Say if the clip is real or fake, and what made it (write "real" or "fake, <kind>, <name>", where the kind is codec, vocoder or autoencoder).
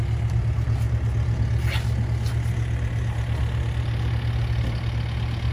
real